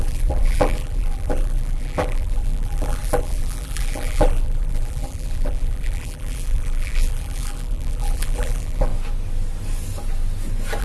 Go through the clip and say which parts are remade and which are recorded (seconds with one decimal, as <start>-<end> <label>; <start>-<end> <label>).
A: 0.0-8.9 remade; 8.9-10.8 recorded